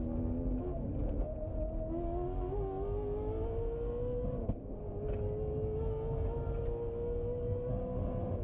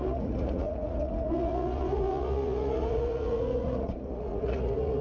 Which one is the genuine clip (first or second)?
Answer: first